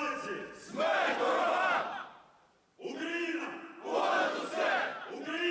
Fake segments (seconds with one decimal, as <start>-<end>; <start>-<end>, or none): 1.2-3.4